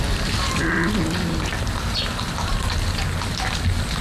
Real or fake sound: real